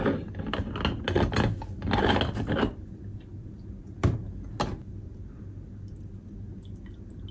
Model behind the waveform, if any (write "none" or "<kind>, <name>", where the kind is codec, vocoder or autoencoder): none